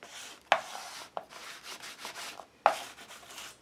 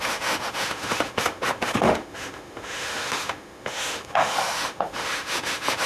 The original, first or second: first